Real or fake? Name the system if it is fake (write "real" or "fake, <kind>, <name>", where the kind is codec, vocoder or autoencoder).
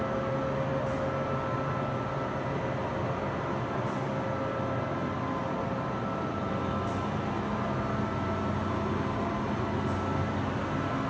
real